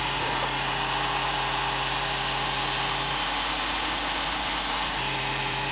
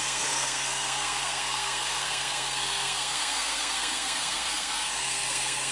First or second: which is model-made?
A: second